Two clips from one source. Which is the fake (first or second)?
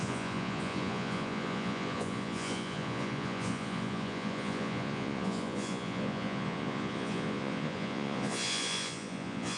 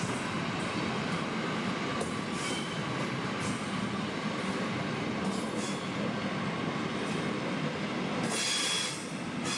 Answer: first